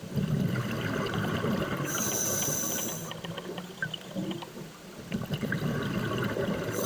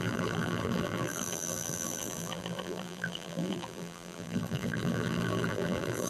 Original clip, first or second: first